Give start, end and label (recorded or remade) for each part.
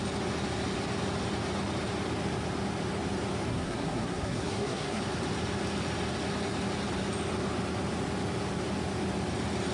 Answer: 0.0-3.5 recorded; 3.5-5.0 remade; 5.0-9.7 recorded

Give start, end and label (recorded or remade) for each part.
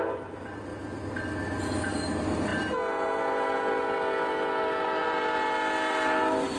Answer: 0.0-6.6 recorded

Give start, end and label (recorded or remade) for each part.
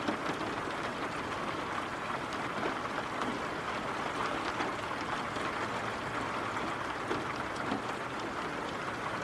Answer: 0.0-9.2 recorded